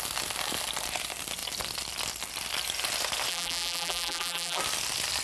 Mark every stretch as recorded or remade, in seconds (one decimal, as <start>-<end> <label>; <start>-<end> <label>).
0.0-3.3 recorded; 3.3-4.6 remade; 4.6-5.2 recorded